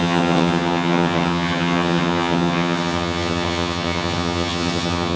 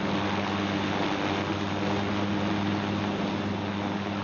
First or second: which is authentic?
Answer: second